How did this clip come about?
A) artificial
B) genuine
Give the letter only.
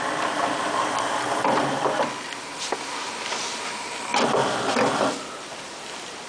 B